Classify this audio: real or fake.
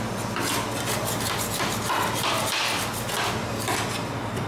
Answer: real